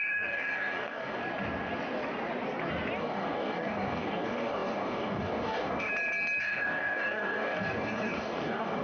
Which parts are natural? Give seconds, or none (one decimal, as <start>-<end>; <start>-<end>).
1.2-3.0; 5.9-6.4